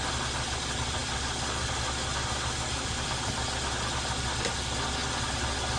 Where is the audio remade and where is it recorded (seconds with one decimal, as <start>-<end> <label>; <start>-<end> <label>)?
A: 0.0-5.8 recorded